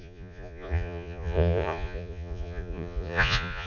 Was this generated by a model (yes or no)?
yes